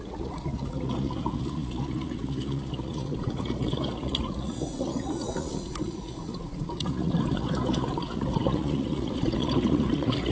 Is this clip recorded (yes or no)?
no